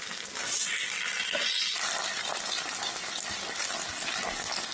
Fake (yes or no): no